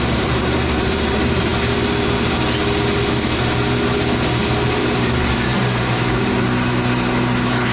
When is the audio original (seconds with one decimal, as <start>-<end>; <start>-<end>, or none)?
1.5-4.6; 5.5-7.7